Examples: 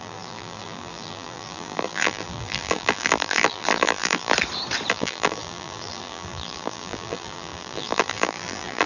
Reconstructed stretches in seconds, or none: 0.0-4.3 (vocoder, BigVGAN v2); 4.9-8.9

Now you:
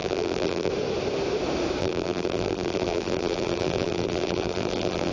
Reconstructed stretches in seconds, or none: 0.0-0.7 (vocoder, BigVGAN v2); 1.8-5.1